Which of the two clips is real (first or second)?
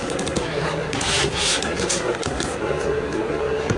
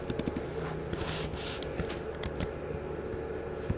second